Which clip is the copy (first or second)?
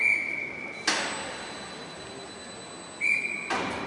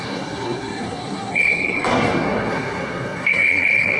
second